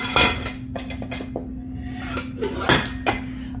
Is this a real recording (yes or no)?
yes